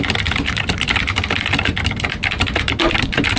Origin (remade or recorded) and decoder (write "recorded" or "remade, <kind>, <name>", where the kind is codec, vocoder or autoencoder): recorded